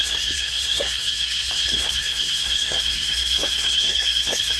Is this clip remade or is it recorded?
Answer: remade